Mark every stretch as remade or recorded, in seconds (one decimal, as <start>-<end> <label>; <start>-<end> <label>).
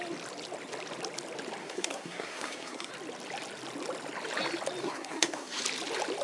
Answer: 0.0-1.6 recorded; 1.6-2.9 remade; 2.9-4.8 recorded; 4.8-5.6 remade; 5.6-6.2 recorded